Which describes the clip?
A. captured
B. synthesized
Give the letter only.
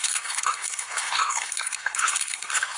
B